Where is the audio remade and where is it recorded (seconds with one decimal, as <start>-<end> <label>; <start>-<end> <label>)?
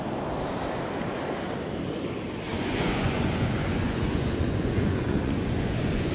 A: 0.0-2.5 recorded; 2.5-6.1 remade